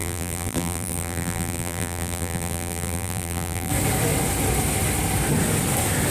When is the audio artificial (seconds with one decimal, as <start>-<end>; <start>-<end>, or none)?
0.0-3.7